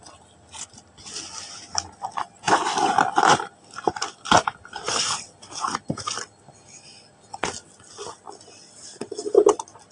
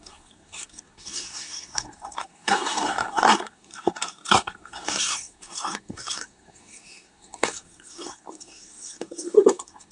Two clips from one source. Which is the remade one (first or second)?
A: second